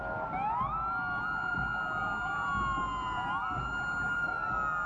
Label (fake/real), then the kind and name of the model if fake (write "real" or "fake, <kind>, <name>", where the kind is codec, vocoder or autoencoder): real